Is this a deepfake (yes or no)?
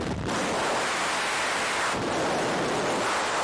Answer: no